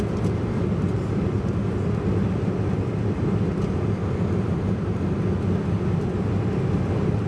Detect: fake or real real